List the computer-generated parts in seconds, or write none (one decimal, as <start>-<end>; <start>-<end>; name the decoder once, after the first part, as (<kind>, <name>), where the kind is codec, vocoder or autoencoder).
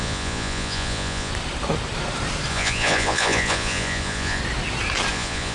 0.0-1.3 (vocoder, Vocos); 2.5-4.4; 5.1-5.5